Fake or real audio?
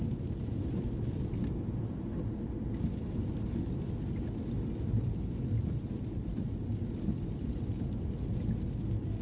real